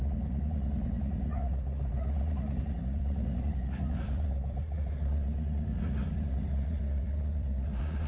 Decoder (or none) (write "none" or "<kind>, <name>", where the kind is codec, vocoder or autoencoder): vocoder, Vocos